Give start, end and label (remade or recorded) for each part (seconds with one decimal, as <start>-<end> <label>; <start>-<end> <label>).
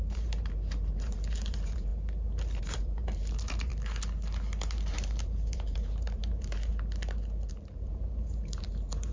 0.0-1.9 remade; 1.9-2.6 recorded; 2.6-3.7 remade; 3.7-4.7 recorded; 4.7-6.7 remade; 6.7-7.5 recorded; 7.5-9.1 remade